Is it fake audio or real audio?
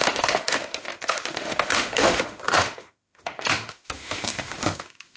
fake